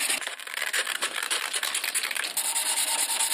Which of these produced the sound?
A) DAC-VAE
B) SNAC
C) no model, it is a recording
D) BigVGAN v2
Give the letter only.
C